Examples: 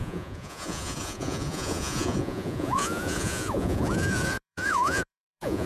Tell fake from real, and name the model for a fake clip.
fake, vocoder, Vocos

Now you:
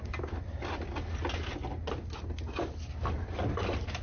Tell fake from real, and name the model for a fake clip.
real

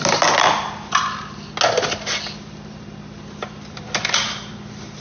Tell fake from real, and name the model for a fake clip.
real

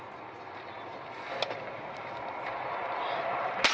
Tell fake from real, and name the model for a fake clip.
real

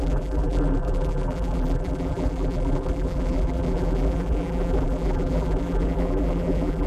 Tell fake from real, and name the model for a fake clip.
fake, vocoder, BigVGAN v2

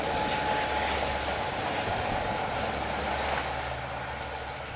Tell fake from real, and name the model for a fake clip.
real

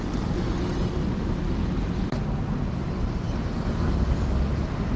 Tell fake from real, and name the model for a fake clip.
real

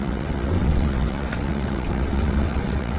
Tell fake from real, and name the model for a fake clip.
fake, vocoder, WaveNeXt